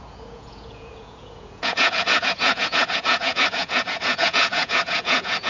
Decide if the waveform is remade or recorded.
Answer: remade